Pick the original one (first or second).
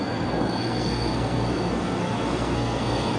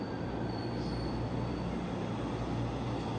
second